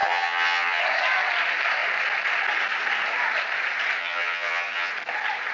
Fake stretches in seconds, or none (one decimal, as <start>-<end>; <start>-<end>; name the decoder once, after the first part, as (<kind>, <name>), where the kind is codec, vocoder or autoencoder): 0.0-0.8 (vocoder, HiFi-GAN); 4.0-4.9